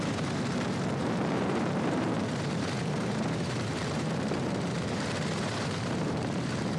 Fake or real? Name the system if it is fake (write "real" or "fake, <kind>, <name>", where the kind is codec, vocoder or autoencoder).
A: fake, vocoder, BigVGAN v2